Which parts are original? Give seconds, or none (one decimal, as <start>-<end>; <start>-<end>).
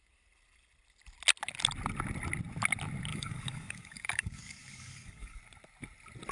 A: 0.0-3.1; 5.4-6.3